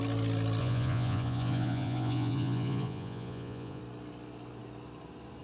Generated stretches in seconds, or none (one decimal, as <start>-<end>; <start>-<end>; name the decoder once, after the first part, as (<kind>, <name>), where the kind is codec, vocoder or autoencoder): 0.6-3.8 (vocoder, Vocos)